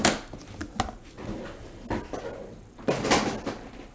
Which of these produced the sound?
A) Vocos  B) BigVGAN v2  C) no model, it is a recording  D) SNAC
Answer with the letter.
C